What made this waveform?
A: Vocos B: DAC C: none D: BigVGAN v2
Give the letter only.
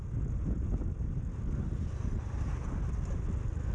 C